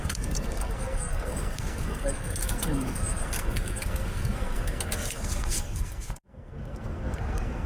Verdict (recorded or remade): remade